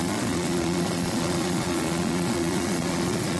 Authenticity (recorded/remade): remade